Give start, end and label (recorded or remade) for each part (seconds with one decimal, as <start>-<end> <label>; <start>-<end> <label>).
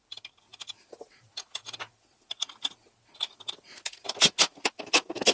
0.0-5.3 recorded